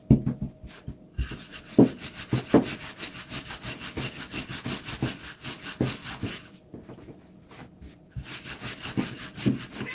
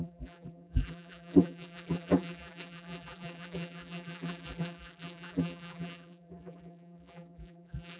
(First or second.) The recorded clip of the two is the first